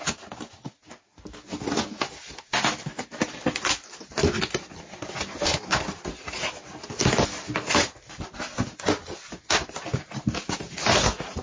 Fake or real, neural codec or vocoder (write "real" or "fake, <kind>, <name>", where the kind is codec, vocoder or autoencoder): real